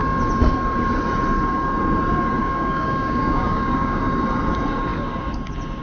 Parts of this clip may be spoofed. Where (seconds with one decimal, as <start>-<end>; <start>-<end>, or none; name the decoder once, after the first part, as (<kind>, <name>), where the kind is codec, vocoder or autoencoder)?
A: 2.4-4.0 (codec, DAC)